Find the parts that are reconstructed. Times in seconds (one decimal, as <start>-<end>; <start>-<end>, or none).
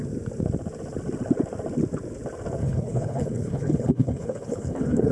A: 2.6-5.1